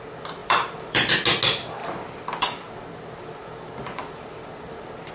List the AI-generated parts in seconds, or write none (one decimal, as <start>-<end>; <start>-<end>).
0.4-1.1; 1.8-5.1